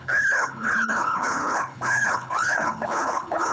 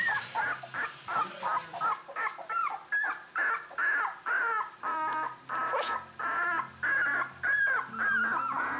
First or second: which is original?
second